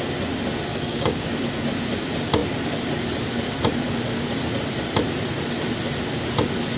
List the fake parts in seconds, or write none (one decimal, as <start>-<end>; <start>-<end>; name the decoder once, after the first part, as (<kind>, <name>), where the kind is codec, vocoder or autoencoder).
0.7-1.3 (codec, DAC)